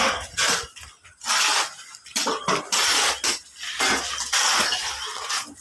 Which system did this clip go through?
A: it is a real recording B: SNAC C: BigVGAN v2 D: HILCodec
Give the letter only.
A